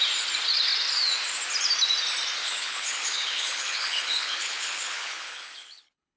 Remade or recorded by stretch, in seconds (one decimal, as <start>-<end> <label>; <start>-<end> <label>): 0.0-2.4 recorded; 2.4-6.2 remade